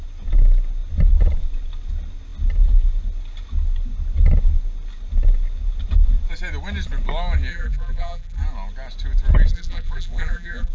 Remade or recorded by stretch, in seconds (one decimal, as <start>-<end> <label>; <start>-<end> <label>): 0.0-7.5 recorded; 7.5-8.4 remade; 8.4-9.5 recorded; 9.5-10.7 remade

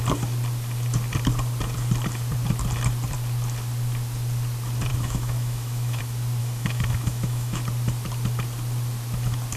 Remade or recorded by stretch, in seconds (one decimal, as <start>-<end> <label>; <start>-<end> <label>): 0.0-4.9 recorded; 4.9-6.0 remade; 6.0-6.4 recorded; 6.4-7.6 remade; 7.6-9.6 recorded

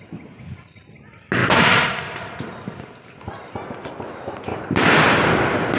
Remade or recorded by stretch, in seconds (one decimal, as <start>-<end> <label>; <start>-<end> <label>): 0.0-1.4 recorded; 1.4-3.5 remade; 3.5-4.5 recorded; 4.5-5.3 remade; 5.3-5.8 recorded